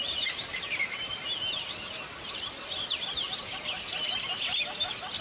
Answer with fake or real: real